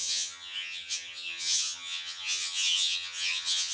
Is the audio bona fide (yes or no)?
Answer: no